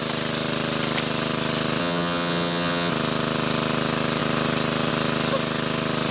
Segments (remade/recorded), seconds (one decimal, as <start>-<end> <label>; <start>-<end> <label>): 0.0-1.8 recorded; 1.8-2.9 remade; 2.9-6.1 recorded